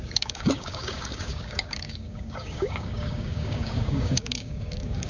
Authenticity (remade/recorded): remade